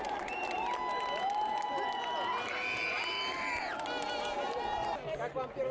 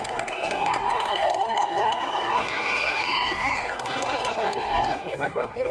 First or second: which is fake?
second